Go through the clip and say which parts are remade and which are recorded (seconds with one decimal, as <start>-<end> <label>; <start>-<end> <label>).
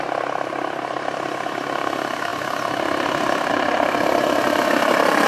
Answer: 0.0-5.3 recorded